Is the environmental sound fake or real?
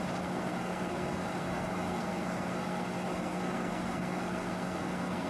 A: fake